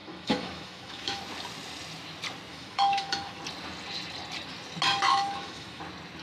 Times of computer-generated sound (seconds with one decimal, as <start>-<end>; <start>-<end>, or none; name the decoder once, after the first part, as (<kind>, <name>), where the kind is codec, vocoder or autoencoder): 0.0-1.2 (autoencoder, DAC-VAE); 2.5-3.4; 5.1-5.8